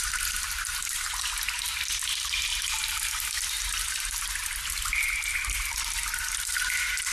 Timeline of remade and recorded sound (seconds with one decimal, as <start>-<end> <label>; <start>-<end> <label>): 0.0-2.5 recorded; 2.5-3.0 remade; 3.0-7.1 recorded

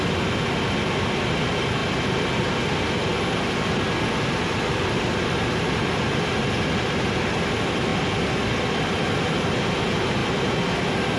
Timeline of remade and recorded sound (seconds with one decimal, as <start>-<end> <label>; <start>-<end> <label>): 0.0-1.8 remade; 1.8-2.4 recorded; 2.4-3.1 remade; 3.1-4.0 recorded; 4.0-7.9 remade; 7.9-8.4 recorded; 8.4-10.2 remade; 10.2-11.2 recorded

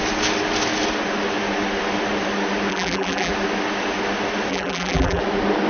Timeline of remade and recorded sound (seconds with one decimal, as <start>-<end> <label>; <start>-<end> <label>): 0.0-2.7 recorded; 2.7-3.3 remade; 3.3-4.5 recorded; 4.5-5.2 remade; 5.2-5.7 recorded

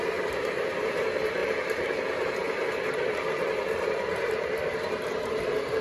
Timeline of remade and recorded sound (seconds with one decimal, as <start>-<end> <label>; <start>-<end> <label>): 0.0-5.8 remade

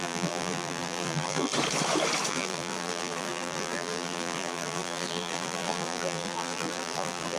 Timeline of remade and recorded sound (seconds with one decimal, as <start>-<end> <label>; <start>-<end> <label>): 0.0-1.5 remade; 1.5-2.3 recorded; 2.3-7.4 remade

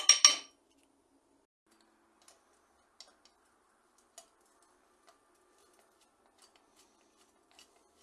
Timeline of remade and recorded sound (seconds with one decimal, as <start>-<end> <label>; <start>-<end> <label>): 0.0-8.0 recorded